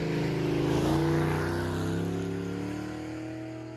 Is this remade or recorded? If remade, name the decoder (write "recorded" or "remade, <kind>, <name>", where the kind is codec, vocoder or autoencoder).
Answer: recorded